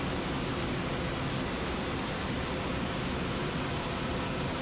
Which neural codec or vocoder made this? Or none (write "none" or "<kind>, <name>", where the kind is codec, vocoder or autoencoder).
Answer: none